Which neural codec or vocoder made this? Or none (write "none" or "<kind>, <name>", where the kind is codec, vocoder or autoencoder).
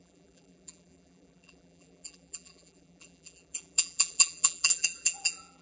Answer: vocoder, BigVGAN v2